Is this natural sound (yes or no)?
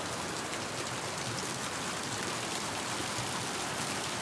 yes